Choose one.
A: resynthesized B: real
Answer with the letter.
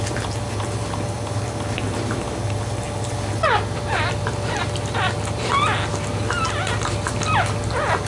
B